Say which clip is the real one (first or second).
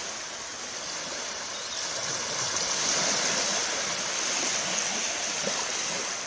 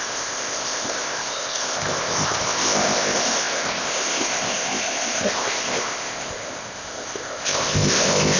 first